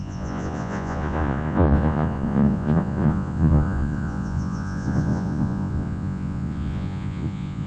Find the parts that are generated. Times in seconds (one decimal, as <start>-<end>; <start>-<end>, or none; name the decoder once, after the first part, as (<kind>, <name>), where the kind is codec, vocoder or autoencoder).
0.0-7.7 (vocoder, Vocos)